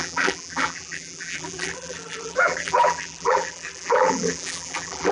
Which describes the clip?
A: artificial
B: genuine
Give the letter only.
A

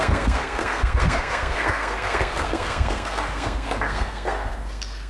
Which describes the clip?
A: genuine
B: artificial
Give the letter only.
B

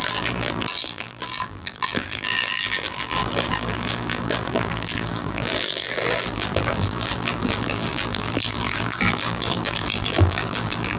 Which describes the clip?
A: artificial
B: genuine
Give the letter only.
A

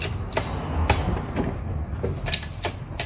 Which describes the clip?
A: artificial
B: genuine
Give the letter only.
B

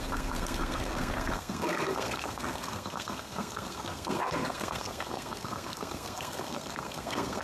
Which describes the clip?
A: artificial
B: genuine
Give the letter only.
A